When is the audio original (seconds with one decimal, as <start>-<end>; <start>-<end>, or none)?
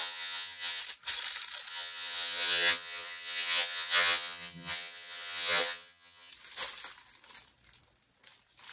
0.8-1.7; 6.3-8.7